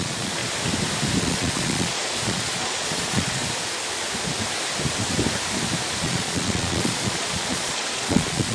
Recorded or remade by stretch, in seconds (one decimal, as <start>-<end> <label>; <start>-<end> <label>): 0.0-0.4 remade; 0.4-1.2 recorded; 1.2-3.4 remade; 3.4-6.0 recorded; 6.0-8.5 remade